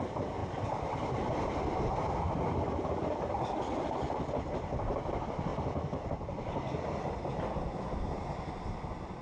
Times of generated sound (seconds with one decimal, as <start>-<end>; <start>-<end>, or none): none

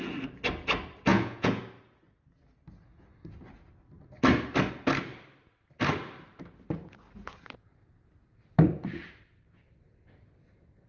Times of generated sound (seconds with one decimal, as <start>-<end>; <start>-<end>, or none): 1.1-1.6